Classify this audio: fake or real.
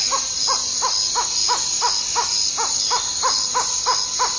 real